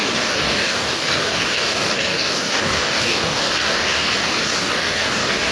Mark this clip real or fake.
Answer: fake